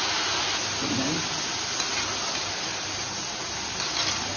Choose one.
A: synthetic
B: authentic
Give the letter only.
B